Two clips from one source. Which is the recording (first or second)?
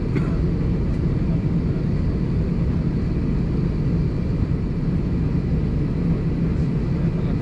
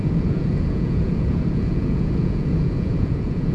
first